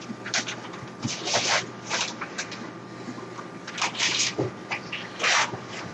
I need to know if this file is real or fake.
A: real